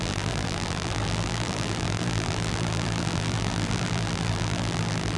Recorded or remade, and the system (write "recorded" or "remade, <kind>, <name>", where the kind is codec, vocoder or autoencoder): remade, vocoder, BigVGAN v2